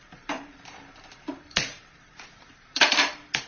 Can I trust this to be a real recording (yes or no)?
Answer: no